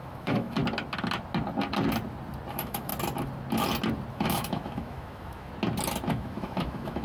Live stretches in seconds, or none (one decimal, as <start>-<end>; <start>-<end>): 0.6-2.5; 2.9-4.1; 5.5-6.1